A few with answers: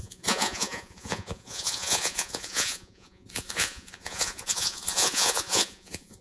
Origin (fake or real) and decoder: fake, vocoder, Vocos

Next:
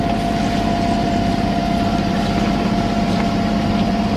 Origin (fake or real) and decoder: real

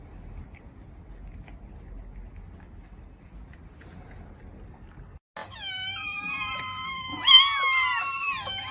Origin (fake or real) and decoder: real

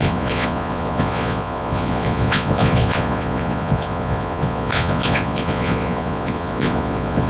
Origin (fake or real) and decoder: fake, vocoder, Vocos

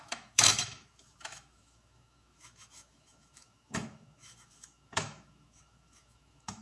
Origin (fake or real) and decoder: fake, autoencoder, DAC-VAE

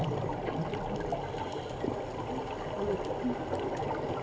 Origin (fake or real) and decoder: real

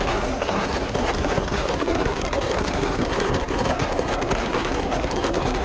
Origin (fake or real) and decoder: fake, codec, SNAC